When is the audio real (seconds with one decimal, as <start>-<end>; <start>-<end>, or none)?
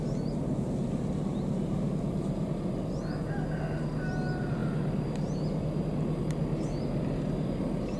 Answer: 0.0-8.0